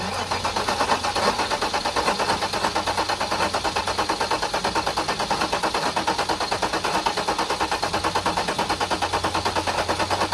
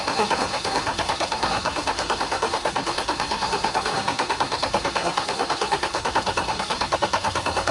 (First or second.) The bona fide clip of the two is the first